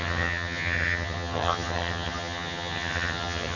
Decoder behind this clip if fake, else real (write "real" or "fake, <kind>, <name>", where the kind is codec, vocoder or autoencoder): fake, vocoder, HiFi-GAN